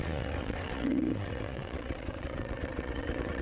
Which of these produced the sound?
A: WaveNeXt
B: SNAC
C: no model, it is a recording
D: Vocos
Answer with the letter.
A